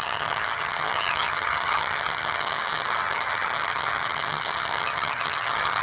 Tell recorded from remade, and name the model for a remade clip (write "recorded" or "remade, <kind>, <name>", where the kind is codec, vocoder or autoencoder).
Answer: remade, vocoder, HiFi-GAN